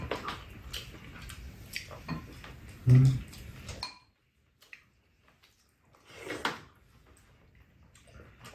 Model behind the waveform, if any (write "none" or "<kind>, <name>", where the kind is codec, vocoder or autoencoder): none